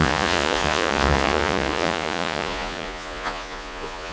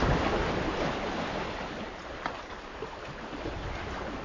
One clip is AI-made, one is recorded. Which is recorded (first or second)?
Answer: second